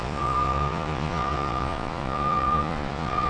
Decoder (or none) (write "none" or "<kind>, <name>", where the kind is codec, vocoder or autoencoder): vocoder, Vocos